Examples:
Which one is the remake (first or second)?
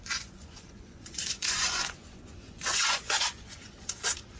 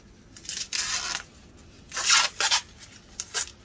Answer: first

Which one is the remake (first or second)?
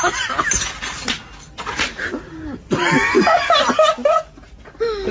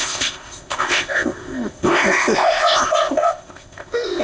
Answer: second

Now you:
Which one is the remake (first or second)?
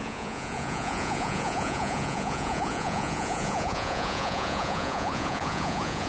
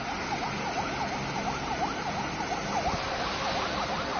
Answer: first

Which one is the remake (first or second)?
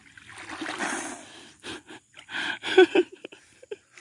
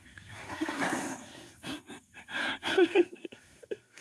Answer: second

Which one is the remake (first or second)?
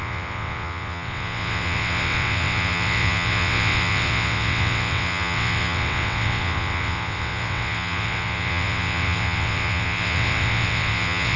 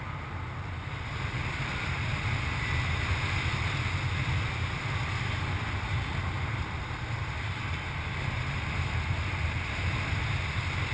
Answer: first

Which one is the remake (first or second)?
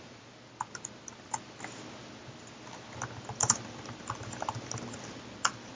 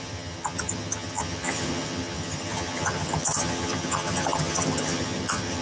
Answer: second